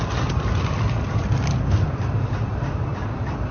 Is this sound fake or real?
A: fake